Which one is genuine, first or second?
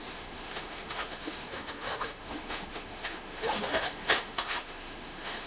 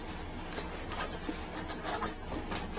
second